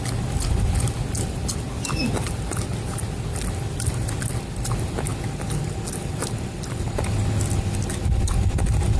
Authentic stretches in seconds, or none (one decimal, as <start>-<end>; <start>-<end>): 0.0-9.0